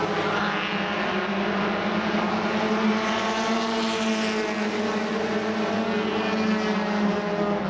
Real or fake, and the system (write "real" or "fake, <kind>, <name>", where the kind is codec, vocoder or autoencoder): real